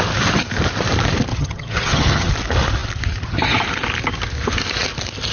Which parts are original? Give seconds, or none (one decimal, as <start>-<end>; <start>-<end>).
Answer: 0.0-1.3; 2.3-5.3